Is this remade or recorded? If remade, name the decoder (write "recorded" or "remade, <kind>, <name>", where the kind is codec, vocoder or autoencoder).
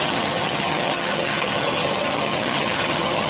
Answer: remade, vocoder, HiFi-GAN